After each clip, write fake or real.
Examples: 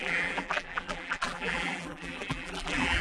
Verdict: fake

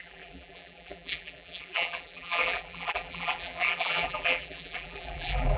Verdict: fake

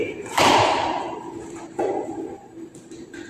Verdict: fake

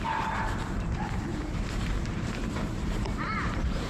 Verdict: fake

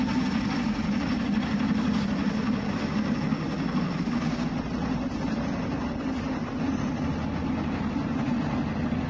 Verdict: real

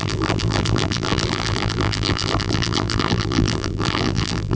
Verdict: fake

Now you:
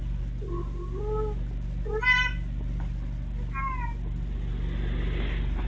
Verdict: real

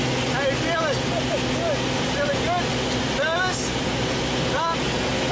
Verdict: real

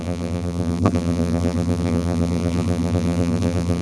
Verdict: fake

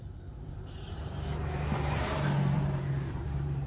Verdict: fake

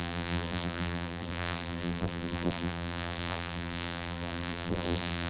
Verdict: fake